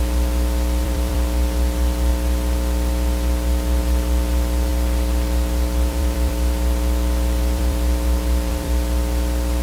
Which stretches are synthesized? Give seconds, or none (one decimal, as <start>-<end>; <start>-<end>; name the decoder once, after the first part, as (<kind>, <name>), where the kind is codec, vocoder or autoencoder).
0.0-2.1 (vocoder, BigVGAN v2); 3.8-9.6